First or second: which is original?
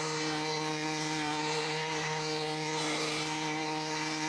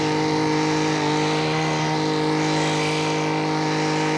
second